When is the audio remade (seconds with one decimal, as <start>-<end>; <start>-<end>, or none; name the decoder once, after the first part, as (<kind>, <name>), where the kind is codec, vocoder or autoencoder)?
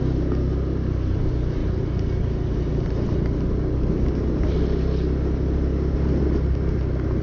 none